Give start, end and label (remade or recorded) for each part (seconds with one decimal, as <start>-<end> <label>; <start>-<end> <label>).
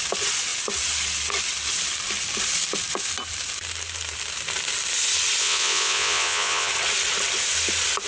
0.0-5.4 recorded; 5.4-6.7 remade; 6.7-8.1 recorded